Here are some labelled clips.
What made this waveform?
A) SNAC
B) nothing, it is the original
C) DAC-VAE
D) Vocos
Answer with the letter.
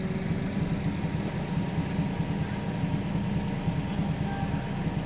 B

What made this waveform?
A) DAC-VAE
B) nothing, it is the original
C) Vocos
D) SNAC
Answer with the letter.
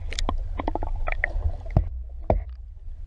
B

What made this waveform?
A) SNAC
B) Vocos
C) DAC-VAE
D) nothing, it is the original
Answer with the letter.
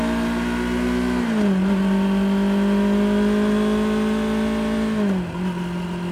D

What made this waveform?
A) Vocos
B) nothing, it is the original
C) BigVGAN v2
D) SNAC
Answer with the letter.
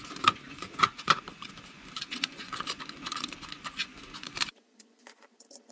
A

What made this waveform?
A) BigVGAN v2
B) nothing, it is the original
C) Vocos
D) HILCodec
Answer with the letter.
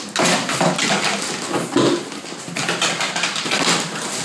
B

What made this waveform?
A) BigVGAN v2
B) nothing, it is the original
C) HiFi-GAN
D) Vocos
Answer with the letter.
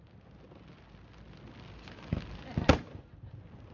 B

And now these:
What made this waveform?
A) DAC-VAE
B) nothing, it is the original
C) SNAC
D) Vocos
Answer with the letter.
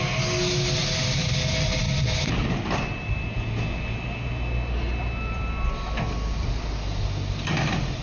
B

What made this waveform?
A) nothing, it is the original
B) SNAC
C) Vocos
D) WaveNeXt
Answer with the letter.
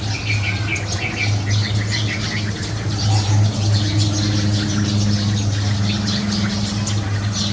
A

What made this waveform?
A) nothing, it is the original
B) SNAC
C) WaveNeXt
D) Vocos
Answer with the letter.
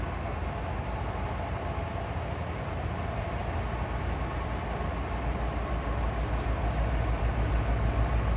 A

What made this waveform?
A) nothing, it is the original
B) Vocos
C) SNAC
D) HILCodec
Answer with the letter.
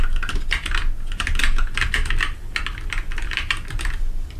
A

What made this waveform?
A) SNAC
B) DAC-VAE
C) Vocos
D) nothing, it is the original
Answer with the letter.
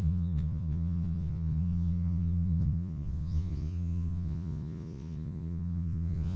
C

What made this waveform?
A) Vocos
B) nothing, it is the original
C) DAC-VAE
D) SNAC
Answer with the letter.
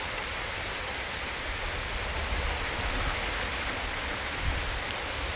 B